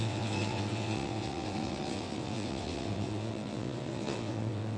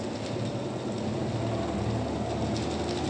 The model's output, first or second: first